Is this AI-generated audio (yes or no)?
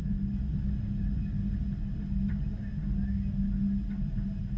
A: no